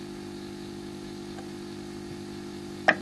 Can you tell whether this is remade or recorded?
recorded